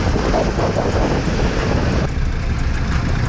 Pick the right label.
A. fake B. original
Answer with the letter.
B